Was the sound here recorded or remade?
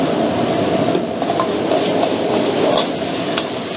recorded